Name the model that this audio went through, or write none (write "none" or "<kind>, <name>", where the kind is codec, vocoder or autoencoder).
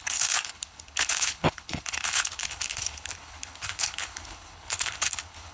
codec, HILCodec